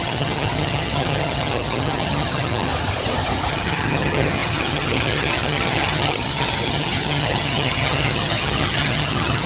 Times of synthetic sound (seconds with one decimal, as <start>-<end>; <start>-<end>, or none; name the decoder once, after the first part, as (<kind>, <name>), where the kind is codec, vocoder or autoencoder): 0.0-2.7 (vocoder, HiFi-GAN); 3.5-9.5